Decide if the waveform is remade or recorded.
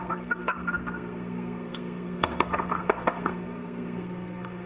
remade